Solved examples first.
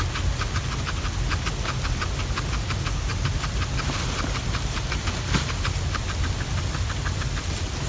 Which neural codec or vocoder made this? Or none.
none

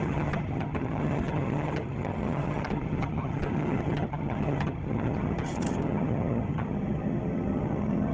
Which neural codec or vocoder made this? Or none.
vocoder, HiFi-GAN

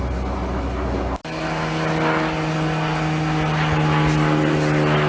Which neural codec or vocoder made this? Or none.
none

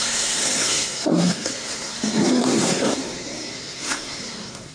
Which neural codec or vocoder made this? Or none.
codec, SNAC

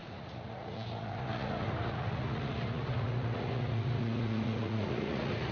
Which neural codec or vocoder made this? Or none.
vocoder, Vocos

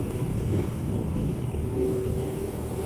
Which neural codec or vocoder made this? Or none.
codec, DAC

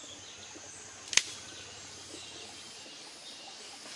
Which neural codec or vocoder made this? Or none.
none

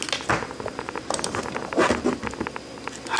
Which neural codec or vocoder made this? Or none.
none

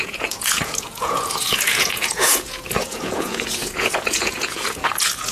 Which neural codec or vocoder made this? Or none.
vocoder, Vocos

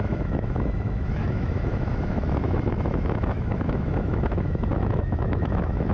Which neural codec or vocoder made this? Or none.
autoencoder, DAC-VAE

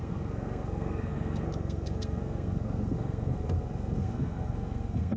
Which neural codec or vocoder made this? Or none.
codec, SNAC